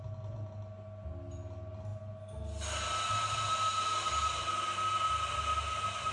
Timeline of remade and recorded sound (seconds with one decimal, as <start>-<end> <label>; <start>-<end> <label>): 0.0-6.1 recorded